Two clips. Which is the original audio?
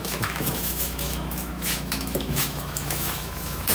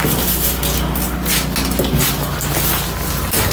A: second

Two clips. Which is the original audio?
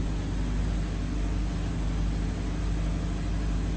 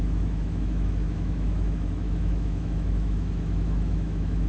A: first